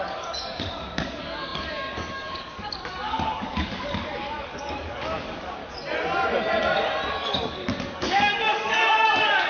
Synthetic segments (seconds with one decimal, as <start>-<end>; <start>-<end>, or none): 0.0-5.6; 7.1-9.5